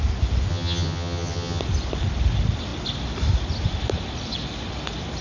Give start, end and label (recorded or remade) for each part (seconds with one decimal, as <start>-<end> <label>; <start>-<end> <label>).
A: 0.0-0.5 recorded; 0.5-1.6 remade; 1.6-5.2 recorded